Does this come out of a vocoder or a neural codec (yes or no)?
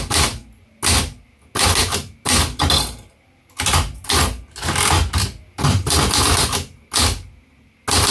no